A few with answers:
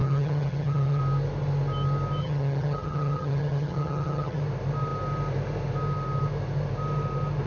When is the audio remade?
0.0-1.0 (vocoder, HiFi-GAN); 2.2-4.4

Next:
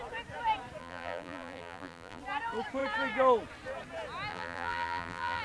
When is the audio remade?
0.8-2.2 (vocoder, BigVGAN v2); 4.3-5.4

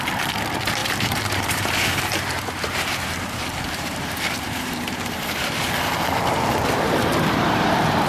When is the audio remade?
0.8-5.7 (vocoder, BigVGAN v2)

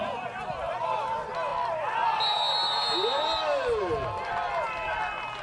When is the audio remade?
none

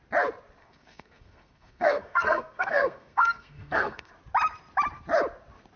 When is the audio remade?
0.6-4.1 (codec, SNAC)

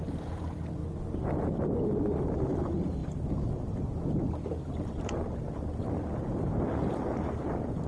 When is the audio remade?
0.0-0.8 (vocoder, BigVGAN v2); 2.2-7.9